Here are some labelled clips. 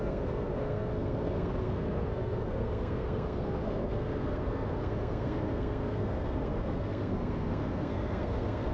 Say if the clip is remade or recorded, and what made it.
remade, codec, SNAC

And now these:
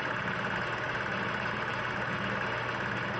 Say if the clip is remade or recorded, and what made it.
recorded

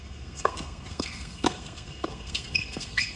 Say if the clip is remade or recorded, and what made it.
remade, codec, SNAC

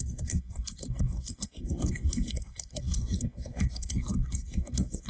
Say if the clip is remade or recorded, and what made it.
remade, codec, SNAC